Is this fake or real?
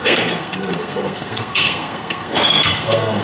fake